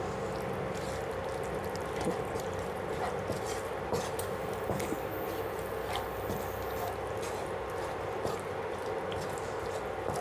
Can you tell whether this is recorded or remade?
recorded